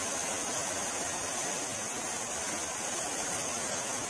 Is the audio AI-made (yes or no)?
no